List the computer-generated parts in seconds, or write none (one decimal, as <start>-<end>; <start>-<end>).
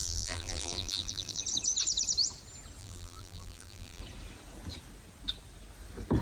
0.0-1.4; 2.8-4.0